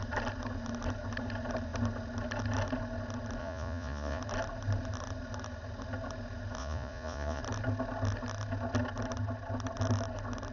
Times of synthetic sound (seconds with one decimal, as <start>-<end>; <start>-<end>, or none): 3.4-4.2; 6.6-7.4